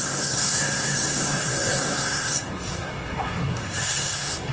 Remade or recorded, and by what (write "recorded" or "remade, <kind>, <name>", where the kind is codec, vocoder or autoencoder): remade, codec, SNAC